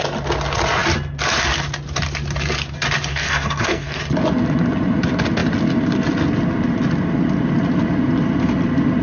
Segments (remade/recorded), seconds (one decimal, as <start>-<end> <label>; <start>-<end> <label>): 0.0-3.1 recorded; 3.1-4.0 remade; 4.0-9.0 recorded